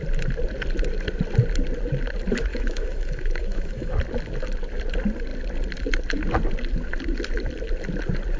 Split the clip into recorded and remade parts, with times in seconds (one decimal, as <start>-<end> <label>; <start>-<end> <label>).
0.0-2.5 recorded; 2.5-3.9 remade; 3.9-8.4 recorded